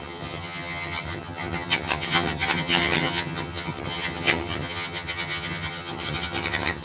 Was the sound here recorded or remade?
remade